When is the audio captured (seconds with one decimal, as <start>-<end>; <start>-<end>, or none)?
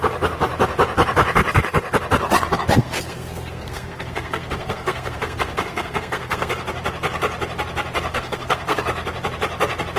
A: 0.0-2.8; 6.5-8.1; 8.8-10.0